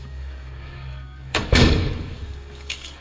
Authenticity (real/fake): fake